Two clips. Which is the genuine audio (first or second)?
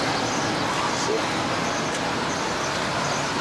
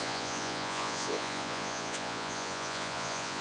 first